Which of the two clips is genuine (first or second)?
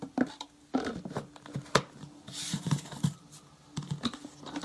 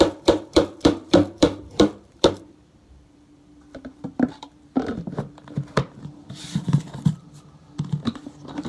first